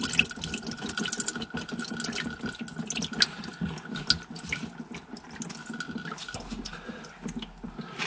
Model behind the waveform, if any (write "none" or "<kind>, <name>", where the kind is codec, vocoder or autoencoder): none